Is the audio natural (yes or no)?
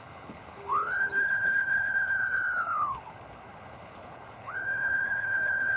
no